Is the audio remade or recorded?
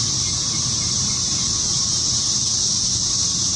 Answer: remade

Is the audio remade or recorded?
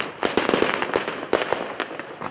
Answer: recorded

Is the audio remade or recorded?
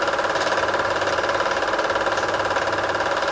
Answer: recorded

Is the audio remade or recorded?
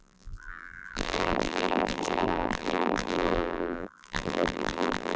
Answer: remade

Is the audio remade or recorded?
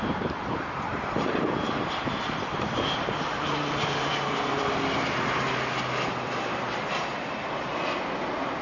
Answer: remade